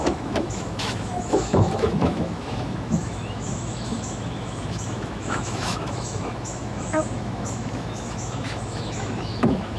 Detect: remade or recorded remade